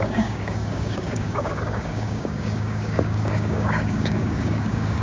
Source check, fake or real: fake